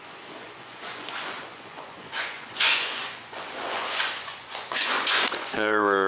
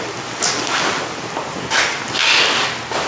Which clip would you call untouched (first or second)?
second